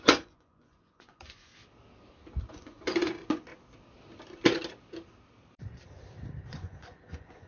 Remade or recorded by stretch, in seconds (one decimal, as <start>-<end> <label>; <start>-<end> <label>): 0.0-1.5 remade; 1.5-2.5 recorded; 2.5-3.5 remade; 3.5-6.5 recorded; 6.5-7.5 remade